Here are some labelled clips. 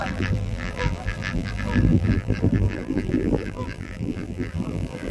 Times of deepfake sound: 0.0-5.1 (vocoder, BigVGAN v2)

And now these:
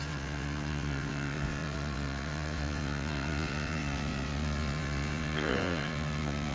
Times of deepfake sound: 0.0-6.5 (vocoder, WaveNeXt)

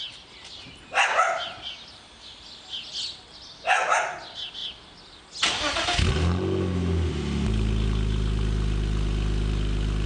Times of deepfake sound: none

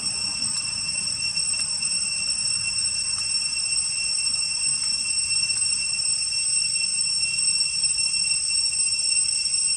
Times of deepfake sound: none

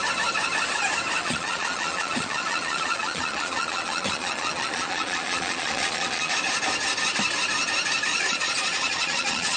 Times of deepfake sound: 1.2-6.3 (vocoder, Vocos); 8.1-9.6

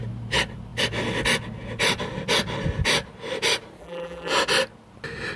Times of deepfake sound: 3.8-4.3 (vocoder, BigVGAN v2)